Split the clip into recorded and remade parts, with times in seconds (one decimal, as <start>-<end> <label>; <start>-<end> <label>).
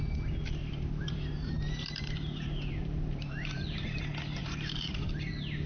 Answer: 0.0-0.6 recorded; 0.6-4.0 remade; 4.0-4.4 recorded; 4.4-5.3 remade; 5.3-5.7 recorded